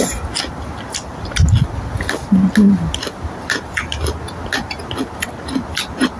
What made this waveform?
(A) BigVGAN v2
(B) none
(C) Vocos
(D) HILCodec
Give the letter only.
B